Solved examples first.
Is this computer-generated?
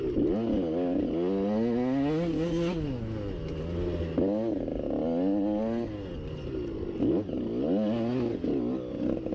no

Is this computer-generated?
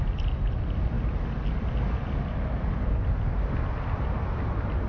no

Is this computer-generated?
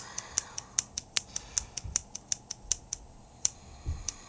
no